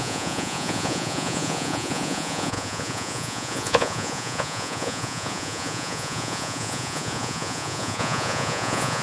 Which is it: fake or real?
fake